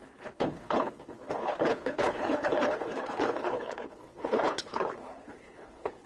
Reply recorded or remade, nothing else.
remade